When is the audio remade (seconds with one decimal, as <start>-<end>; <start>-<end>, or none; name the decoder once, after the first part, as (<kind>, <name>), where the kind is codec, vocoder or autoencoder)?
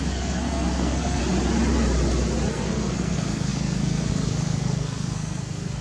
0.0-1.2 (codec, SNAC); 2.5-5.8